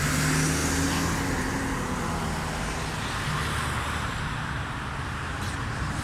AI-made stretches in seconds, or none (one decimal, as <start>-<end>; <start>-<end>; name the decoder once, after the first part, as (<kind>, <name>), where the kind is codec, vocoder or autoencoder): none